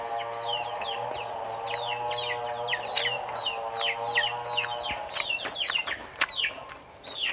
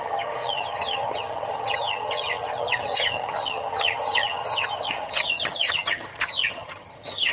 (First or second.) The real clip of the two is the first